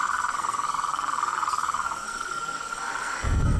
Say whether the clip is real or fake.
fake